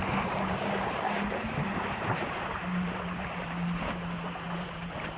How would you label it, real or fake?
fake